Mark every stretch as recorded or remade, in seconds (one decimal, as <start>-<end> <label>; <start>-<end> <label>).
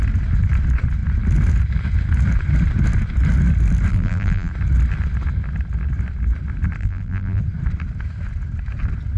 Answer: 0.0-3.9 recorded; 3.9-4.5 remade; 4.5-6.8 recorded; 6.8-7.4 remade; 7.4-9.2 recorded